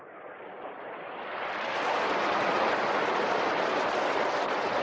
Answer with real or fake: real